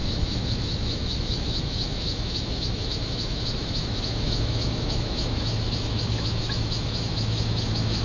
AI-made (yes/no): yes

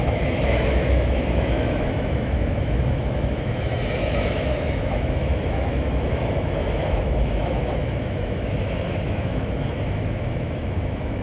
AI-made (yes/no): yes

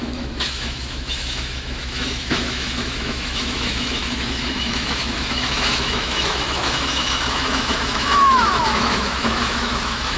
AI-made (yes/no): yes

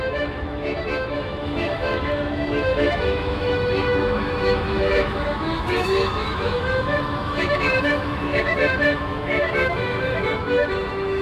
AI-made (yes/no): yes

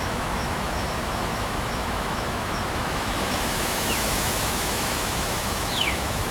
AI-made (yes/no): yes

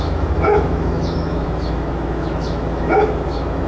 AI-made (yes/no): yes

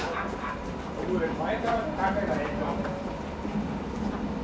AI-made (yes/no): no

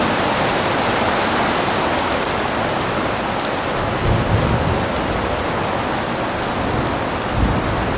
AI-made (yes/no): no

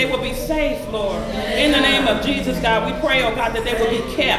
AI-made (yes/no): no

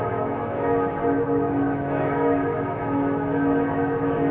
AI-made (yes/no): yes